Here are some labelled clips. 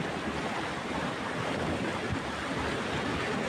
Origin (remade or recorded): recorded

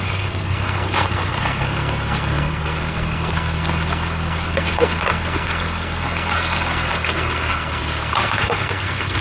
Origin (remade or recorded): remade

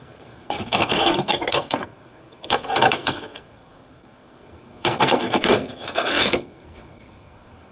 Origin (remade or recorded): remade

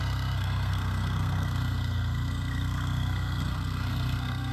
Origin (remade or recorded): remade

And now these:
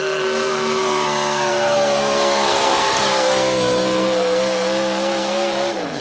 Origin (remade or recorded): remade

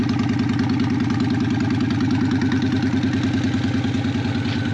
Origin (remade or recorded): recorded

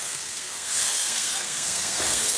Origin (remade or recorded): remade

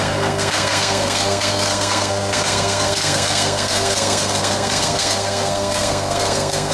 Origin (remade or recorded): remade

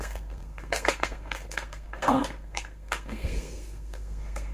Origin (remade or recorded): remade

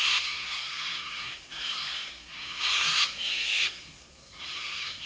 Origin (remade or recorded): remade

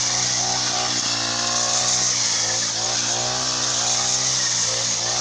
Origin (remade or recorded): recorded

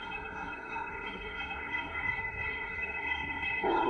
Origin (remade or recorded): remade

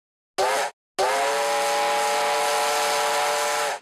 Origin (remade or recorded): recorded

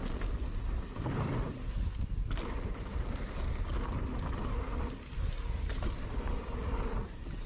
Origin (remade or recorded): recorded